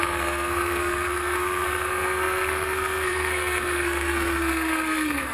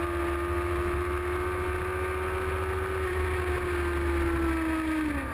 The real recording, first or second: second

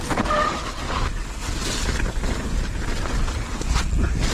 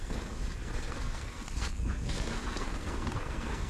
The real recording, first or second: first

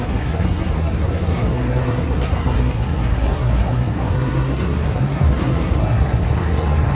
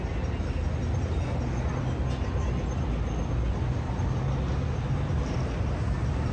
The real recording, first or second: second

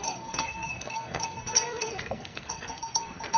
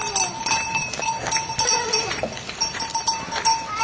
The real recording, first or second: second